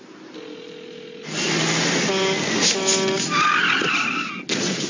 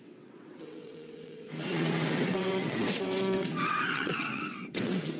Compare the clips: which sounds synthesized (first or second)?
second